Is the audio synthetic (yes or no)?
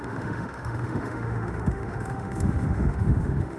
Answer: yes